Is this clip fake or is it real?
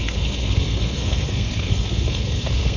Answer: fake